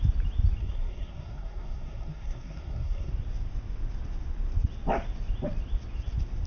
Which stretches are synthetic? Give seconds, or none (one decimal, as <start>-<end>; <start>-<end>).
0.6-3.1